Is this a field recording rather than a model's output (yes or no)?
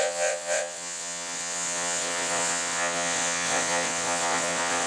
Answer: no